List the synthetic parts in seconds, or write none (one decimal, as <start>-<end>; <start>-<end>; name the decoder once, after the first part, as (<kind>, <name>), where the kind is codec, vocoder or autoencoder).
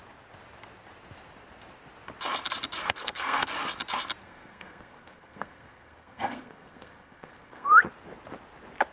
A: 2.8-3.5 (codec, SNAC); 4.2-7.8